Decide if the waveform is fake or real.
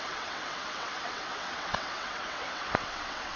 fake